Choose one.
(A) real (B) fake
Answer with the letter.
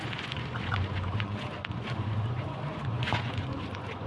B